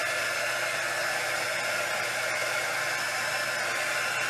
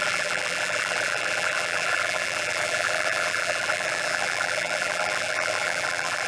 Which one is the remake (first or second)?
second